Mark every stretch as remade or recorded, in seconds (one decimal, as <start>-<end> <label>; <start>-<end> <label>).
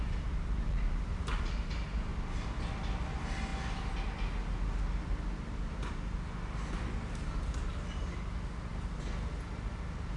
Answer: 0.0-10.2 recorded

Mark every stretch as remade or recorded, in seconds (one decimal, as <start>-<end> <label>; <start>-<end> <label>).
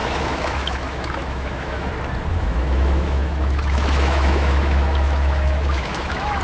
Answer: 0.0-1.9 remade; 1.9-2.3 recorded; 2.3-6.4 remade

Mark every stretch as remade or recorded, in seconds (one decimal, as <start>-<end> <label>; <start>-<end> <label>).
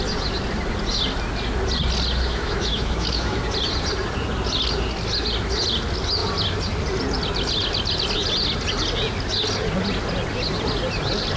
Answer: 0.0-2.3 recorded; 2.3-3.4 remade; 3.4-11.4 recorded